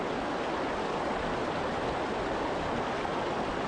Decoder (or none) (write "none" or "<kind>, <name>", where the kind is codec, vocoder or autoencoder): none